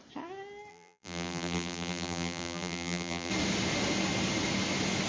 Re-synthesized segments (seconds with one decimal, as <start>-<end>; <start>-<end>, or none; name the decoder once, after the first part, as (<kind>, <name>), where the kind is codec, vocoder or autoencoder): 0.7-3.3 (vocoder, BigVGAN v2)